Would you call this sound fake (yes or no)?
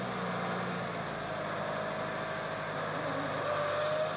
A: no